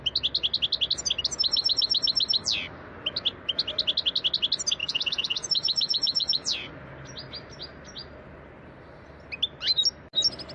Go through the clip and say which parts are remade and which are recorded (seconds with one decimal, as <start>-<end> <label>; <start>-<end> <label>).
0.0-4.8 recorded; 4.8-6.7 remade; 6.7-10.5 recorded